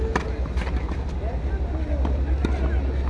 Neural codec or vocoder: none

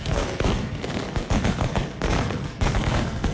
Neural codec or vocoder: codec, SNAC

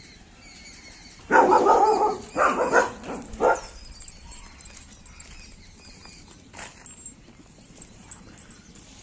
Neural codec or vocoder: none